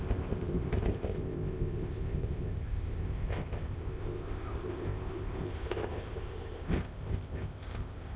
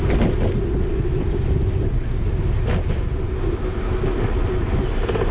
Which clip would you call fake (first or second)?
first